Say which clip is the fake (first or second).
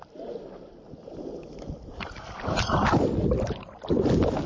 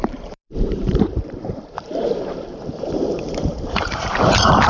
second